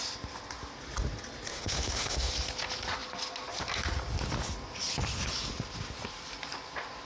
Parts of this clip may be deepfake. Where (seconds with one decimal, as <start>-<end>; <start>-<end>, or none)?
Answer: 1.5-2.3

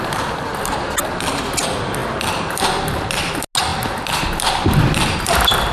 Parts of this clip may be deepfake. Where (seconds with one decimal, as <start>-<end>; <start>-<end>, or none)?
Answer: none

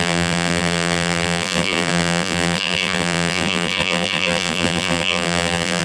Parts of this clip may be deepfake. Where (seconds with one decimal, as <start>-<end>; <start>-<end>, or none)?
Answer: 0.0-5.8